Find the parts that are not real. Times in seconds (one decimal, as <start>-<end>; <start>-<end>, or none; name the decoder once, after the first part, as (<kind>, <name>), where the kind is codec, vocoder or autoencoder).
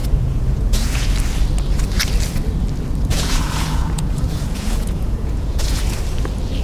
0.0-1.1 (vocoder, Vocos); 3.1-5.8